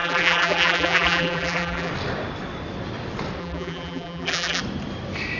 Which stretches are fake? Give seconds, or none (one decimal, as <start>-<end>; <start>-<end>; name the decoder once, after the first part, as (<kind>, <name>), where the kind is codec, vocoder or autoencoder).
0.0-1.9 (vocoder, BigVGAN v2); 3.4-4.6